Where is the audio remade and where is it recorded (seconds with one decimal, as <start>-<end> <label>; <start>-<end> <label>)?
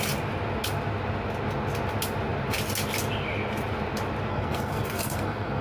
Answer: 0.0-4.3 recorded; 4.3-5.6 remade